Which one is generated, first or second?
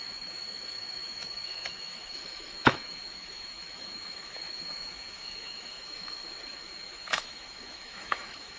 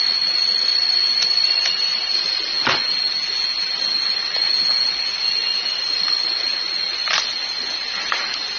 first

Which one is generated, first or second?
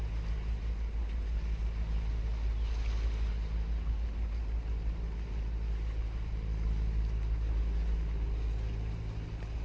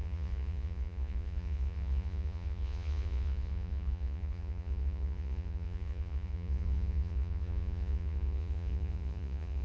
second